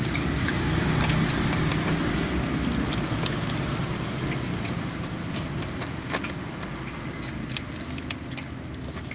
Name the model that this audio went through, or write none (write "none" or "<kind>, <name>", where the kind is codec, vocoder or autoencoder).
none